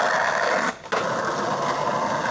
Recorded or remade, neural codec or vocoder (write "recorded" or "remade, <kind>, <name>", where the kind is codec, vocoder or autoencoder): recorded